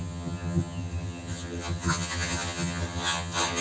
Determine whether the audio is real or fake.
fake